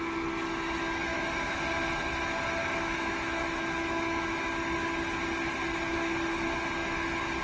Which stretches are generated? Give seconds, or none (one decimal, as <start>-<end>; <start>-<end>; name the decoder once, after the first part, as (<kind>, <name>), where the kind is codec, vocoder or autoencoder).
1.1-1.6 (autoencoder, DAC-VAE); 2.6-4.5